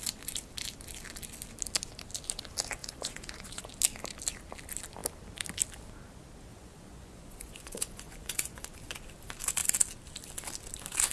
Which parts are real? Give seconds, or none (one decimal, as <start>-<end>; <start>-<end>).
0.0-2.8; 3.7-6.5; 8.6-11.1